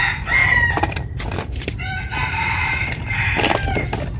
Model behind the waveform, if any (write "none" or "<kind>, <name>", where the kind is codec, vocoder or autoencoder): none